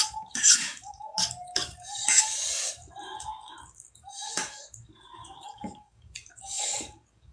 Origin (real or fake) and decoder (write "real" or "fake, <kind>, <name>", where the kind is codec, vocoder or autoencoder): fake, codec, DAC